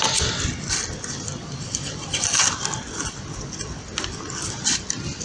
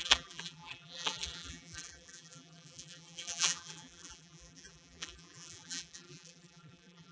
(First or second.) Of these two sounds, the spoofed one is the second